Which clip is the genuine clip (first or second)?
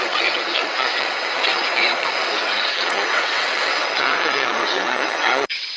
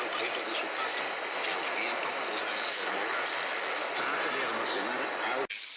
second